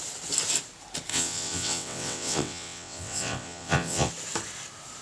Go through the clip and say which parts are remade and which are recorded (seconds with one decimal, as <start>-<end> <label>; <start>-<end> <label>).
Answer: 0.0-1.1 recorded; 1.1-4.1 remade; 4.1-5.0 recorded